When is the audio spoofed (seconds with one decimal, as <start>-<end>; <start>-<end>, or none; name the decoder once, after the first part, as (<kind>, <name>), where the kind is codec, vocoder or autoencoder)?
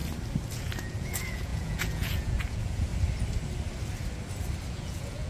0.5-2.9 (vocoder, Vocos); 4.7-5.3